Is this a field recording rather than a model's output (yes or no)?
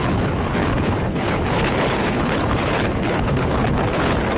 no